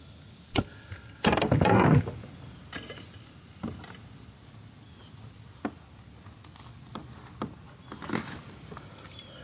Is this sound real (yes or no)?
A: yes